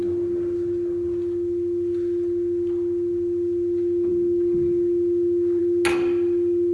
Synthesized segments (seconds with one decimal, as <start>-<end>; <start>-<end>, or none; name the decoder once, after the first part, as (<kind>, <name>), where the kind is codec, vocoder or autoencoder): none